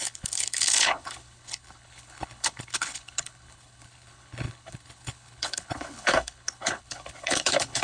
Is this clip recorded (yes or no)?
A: no